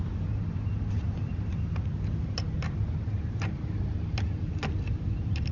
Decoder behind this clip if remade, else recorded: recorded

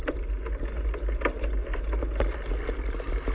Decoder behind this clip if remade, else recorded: recorded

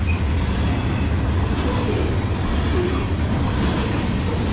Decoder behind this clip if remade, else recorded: recorded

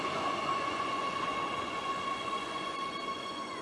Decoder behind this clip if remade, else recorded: remade, vocoder, Vocos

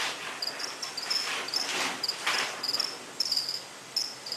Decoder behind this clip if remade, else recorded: recorded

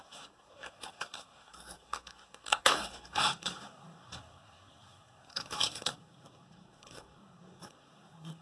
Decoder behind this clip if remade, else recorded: remade, codec, SNAC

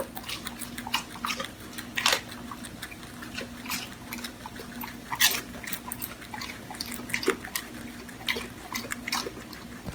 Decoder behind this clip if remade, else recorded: recorded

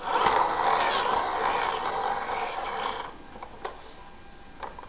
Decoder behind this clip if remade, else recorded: recorded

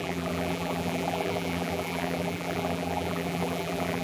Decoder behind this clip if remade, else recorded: remade, vocoder, BigVGAN v2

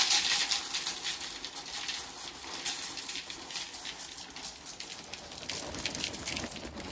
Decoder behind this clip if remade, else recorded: recorded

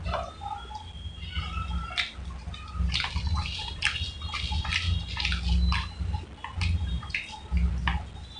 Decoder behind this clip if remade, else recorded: recorded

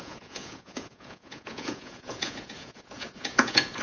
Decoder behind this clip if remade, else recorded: remade, vocoder, Vocos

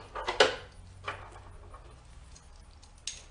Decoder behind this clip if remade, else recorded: recorded